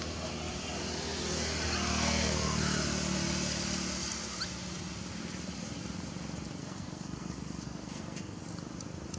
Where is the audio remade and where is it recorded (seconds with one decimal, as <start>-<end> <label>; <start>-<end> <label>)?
0.0-1.9 recorded; 1.9-2.6 remade; 2.6-6.6 recorded; 6.6-8.4 remade; 8.4-9.2 recorded